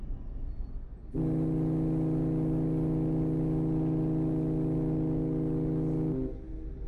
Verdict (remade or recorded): recorded